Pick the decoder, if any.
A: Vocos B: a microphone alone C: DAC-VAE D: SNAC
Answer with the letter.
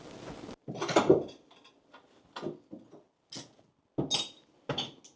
B